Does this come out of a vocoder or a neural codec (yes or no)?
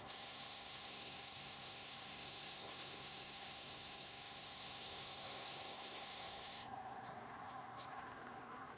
yes